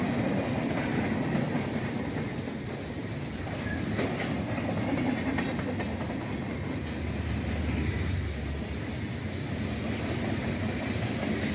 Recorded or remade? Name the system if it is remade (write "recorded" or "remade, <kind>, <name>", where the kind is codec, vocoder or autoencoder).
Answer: recorded